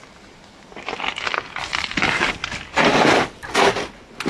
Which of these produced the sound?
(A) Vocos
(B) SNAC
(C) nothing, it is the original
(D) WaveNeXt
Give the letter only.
C